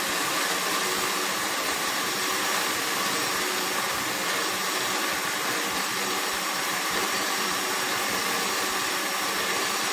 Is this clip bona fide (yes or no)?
yes